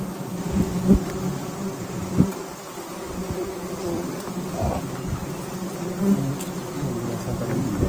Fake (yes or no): no